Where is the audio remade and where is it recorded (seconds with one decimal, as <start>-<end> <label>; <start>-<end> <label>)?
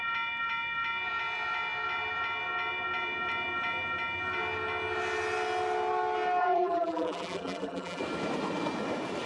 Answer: 0.0-6.4 recorded; 6.4-8.0 remade; 8.0-9.3 recorded